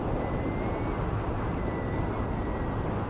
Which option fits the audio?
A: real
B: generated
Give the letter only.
A